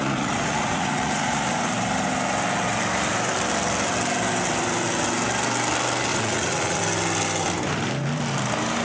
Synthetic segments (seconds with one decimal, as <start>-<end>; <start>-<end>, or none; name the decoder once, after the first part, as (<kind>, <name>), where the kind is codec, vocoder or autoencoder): 0.0-1.5 (vocoder, Vocos); 6.1-6.8